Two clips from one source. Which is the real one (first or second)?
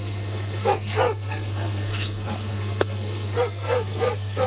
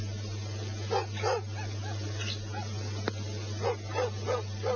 second